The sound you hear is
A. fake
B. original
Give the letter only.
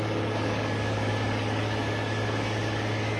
A